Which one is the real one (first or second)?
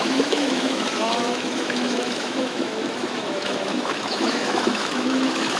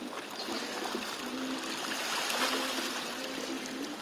second